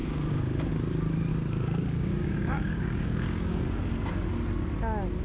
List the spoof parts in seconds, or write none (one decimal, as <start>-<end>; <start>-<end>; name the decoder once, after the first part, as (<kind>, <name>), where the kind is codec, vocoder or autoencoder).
0.0-0.7 (codec, DAC); 1.3-3.9